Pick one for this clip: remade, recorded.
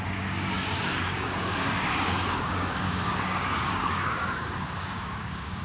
remade